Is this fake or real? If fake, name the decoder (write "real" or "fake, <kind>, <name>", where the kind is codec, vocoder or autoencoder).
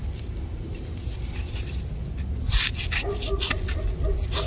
real